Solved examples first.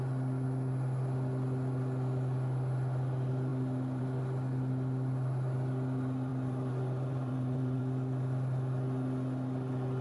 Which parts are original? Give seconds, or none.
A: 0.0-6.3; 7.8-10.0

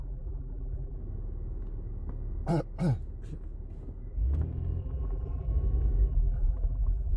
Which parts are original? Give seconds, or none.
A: 1.0-4.8; 5.5-6.1

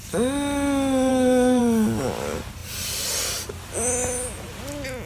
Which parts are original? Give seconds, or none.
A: 0.0-1.1; 1.6-5.1